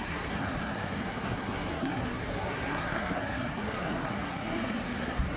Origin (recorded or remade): remade